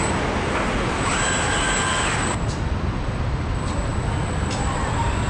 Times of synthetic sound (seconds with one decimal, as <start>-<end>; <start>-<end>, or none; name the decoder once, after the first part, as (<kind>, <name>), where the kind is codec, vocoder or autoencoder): none